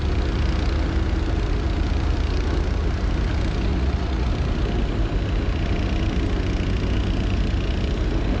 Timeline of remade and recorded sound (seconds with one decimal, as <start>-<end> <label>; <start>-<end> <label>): 0.0-3.7 recorded; 3.7-4.3 remade; 4.3-8.4 recorded